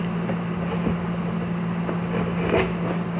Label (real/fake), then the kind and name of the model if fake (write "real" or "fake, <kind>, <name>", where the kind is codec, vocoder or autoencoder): real